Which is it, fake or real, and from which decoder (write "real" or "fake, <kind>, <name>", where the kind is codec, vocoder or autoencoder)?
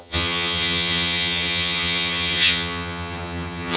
fake, vocoder, HiFi-GAN